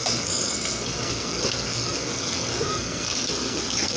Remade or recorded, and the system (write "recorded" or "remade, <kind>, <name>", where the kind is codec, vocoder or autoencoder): remade, codec, SNAC